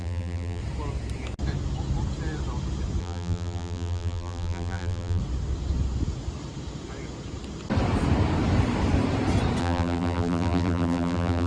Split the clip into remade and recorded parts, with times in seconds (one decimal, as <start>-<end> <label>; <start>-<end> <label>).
0.0-0.6 remade; 0.6-3.0 recorded; 3.0-5.2 remade; 5.2-9.6 recorded; 9.6-11.5 remade